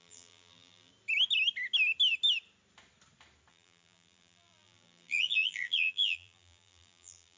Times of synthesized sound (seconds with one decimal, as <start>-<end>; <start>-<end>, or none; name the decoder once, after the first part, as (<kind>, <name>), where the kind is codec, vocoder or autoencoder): 0.0-0.9 (vocoder, BigVGAN v2); 3.5-7.4